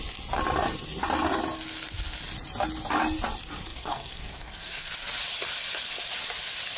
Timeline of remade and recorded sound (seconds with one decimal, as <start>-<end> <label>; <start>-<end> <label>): 0.0-3.7 recorded; 3.7-4.9 remade; 4.9-6.8 recorded